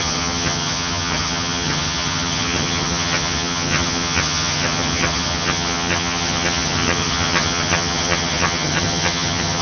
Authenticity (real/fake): fake